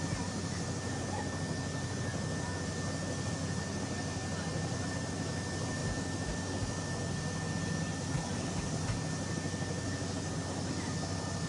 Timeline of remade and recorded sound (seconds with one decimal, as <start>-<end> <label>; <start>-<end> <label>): 0.0-11.5 recorded